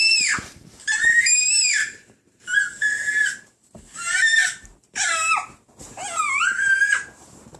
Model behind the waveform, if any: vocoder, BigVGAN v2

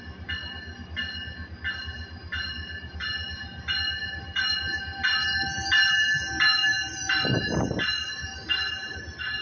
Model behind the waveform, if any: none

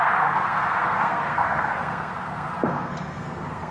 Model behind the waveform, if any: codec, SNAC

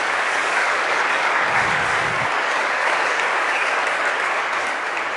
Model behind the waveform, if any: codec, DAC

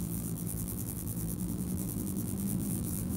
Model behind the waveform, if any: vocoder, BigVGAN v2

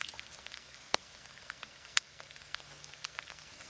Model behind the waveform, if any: codec, SNAC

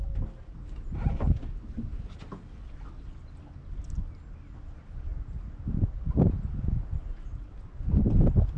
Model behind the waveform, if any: none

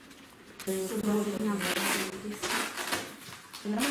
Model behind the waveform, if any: none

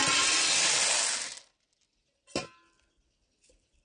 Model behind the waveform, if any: none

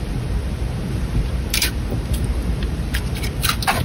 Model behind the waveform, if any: vocoder, BigVGAN v2